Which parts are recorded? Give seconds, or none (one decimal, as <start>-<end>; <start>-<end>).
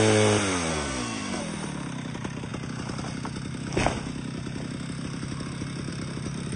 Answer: 0.0-0.7; 1.4-6.6